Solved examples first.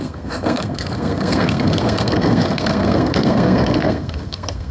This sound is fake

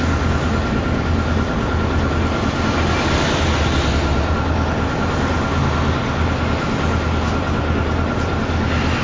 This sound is real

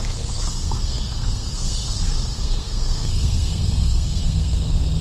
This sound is fake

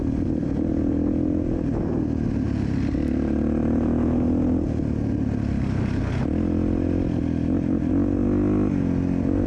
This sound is real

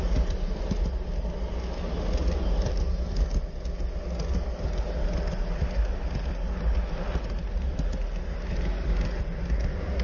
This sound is real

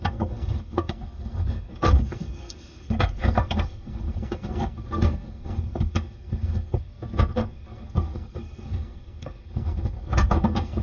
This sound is fake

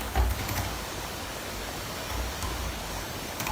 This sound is fake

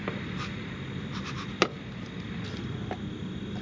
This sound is real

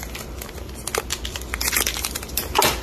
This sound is real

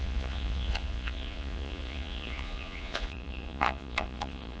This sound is fake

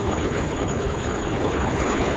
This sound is fake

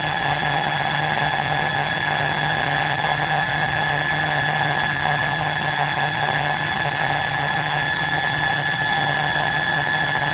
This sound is fake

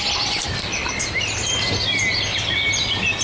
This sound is real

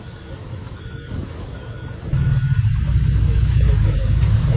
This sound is fake